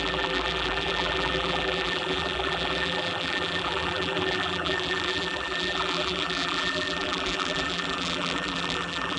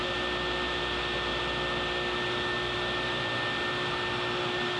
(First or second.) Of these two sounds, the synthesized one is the first